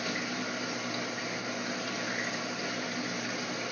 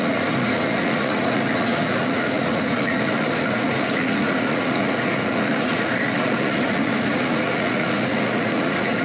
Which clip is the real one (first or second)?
first